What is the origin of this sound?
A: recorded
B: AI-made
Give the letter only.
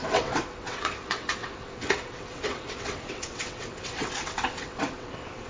B